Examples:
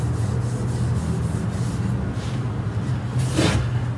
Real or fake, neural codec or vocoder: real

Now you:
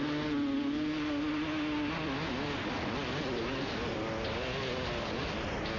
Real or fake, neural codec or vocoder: real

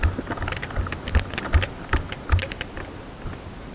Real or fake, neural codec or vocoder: real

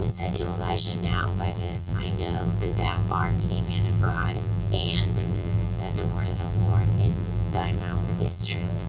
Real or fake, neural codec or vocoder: fake, vocoder, BigVGAN v2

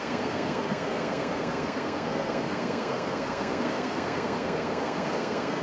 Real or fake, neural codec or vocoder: fake, codec, SNAC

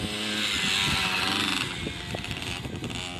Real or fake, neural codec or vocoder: real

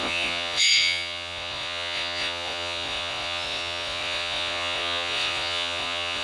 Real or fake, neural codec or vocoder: fake, vocoder, Vocos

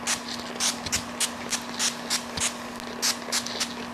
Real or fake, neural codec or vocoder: real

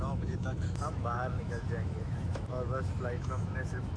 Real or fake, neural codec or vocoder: fake, autoencoder, DAC-VAE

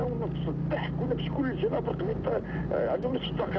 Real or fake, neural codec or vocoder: real